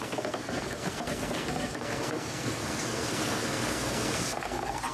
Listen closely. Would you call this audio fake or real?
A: fake